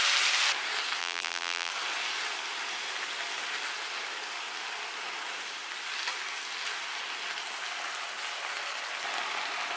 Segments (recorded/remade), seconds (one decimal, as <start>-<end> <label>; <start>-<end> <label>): 0.0-1.0 recorded; 1.0-1.7 remade; 1.7-9.8 recorded